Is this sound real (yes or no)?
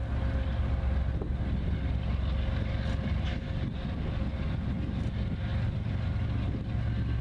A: yes